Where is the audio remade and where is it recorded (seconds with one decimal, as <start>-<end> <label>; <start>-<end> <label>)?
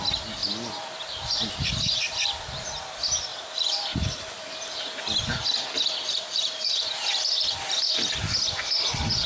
0.0-9.3 recorded